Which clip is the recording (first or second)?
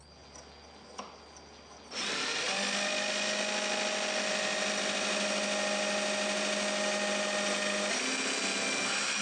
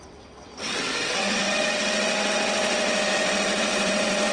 first